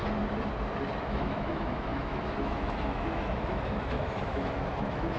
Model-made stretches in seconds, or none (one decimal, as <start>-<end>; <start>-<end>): 1.0-5.2